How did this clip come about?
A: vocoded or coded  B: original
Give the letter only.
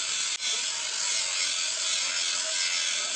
B